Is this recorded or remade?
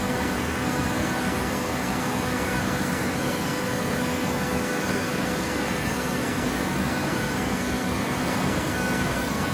remade